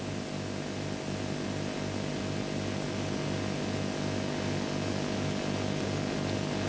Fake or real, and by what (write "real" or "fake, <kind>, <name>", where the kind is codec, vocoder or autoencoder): real